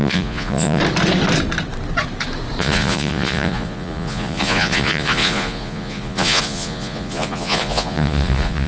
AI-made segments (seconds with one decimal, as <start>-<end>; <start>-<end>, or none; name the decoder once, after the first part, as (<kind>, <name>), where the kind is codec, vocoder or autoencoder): 0.0-0.8 (vocoder, Vocos); 2.6-8.7